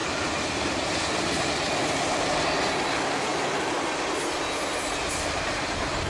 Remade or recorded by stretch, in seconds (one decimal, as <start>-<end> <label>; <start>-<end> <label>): 0.0-0.9 remade; 0.9-6.1 recorded